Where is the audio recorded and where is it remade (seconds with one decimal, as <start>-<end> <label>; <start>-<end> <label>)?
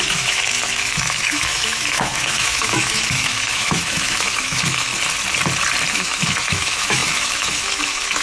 0.0-4.9 remade; 4.9-5.9 recorded; 5.9-8.2 remade